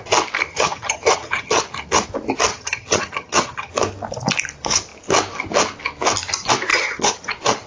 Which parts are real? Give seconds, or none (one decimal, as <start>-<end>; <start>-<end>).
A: 0.0-0.5; 1.6-2.5; 3.7-6.7; 7.3-7.7